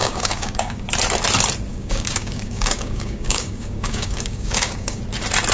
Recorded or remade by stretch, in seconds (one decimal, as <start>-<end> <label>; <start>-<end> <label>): 0.0-0.8 remade; 0.8-1.7 recorded; 1.7-5.0 remade; 5.0-5.5 recorded